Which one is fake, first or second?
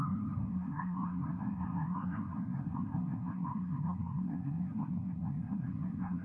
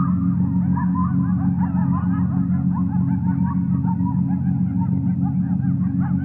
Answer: first